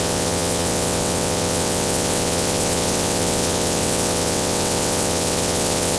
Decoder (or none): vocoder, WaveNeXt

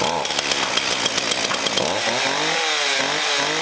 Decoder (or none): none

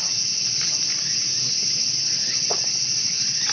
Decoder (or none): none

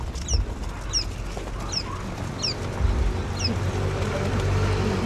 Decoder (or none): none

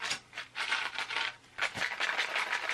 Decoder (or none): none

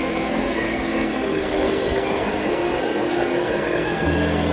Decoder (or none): codec, SNAC